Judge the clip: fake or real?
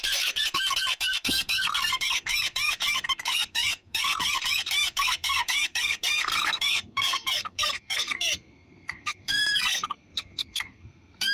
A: fake